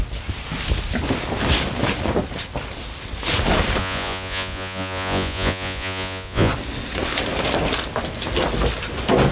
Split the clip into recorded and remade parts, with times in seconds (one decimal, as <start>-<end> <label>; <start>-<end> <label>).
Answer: 0.0-3.8 recorded; 3.8-6.5 remade; 6.5-9.3 recorded